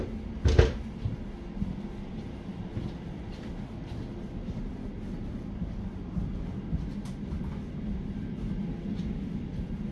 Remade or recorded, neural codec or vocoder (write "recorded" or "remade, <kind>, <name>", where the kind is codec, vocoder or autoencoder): recorded